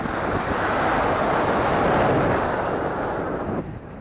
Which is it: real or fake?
real